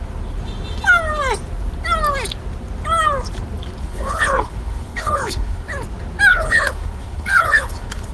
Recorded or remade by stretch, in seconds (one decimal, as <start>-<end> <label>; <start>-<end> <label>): 0.0-3.8 recorded; 3.8-5.7 remade; 5.7-6.3 recorded; 6.3-8.1 remade